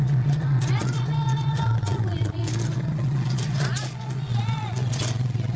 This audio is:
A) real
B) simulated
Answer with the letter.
B